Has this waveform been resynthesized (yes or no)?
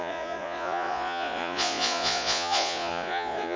yes